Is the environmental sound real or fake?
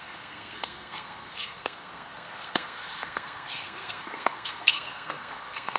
fake